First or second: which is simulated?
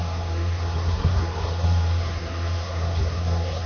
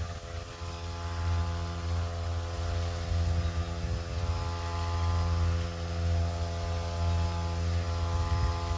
first